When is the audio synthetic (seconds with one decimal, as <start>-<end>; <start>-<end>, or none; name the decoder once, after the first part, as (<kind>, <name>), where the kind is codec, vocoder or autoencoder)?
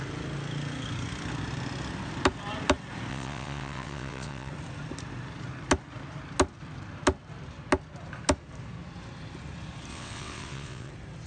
3.1-4.5 (vocoder, WaveNeXt); 9.9-10.9